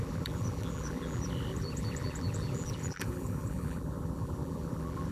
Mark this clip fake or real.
fake